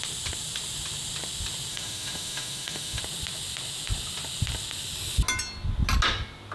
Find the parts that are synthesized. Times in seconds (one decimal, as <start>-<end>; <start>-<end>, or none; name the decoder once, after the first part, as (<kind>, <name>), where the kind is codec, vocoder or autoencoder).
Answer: 1.7-3.0 (autoencoder, DAC-VAE)